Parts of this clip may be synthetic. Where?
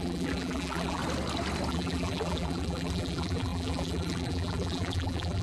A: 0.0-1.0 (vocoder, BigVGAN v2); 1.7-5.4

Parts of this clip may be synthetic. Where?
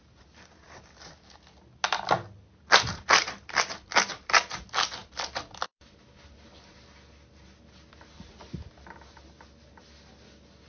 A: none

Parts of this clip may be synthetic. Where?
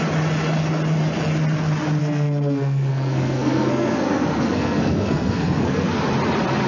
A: 2.0-6.0 (codec, SNAC)